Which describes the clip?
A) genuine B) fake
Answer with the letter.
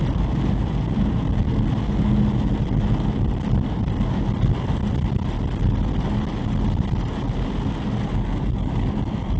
A